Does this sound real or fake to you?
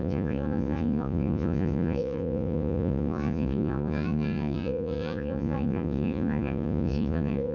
fake